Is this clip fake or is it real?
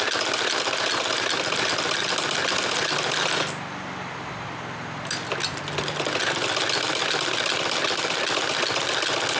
real